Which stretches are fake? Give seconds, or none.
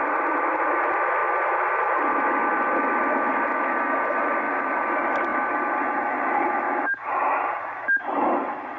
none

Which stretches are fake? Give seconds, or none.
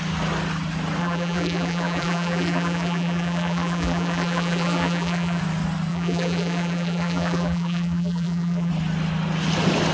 1.0-5.4 (vocoder, BigVGAN v2); 5.9-8.7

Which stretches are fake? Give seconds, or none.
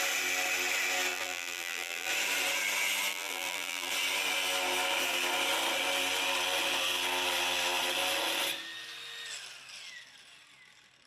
1.1-2.1 (vocoder, BigVGAN v2); 3.1-3.9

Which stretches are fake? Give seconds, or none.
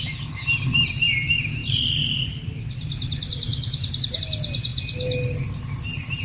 1.6-4.2 (vocoder, BigVGAN v2)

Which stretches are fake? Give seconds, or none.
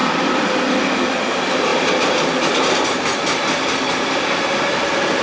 0.0-0.5 (vocoder, BigVGAN v2); 1.7-4.8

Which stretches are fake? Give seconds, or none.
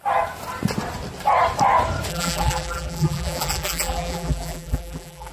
2.1-5.3 (vocoder, BigVGAN v2)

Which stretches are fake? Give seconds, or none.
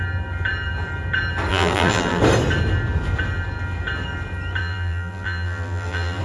1.5-2.2 (vocoder, BigVGAN v2); 4.6-6.2